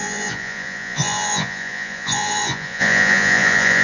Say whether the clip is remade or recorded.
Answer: remade